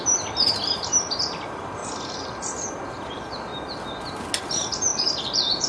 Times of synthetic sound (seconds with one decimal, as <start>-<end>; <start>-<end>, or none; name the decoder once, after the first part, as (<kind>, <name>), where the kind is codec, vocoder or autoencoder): 0.0-1.8 (vocoder, BigVGAN v2); 2.7-3.5; 4.4-5.7